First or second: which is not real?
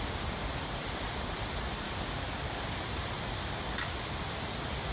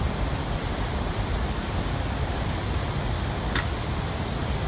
first